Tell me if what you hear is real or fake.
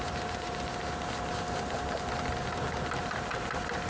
real